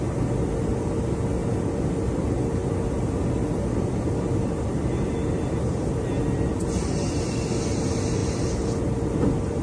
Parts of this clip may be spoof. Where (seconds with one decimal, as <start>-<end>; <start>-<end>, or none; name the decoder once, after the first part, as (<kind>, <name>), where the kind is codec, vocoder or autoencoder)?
none